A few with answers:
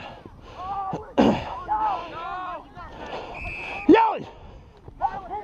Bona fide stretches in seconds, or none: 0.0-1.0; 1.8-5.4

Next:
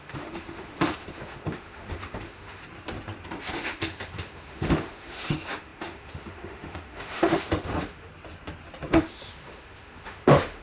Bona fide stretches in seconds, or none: 2.6-3.5; 8.1-8.9

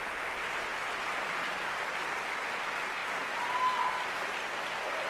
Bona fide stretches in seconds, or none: 0.0-5.1

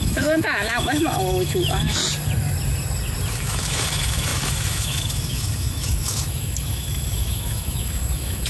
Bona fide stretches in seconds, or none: 2.0-3.3